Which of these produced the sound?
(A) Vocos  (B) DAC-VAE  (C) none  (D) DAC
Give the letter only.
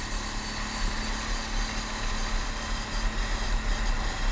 C